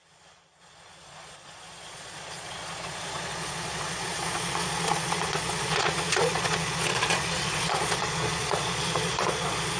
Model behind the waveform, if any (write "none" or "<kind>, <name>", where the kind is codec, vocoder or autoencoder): vocoder, Vocos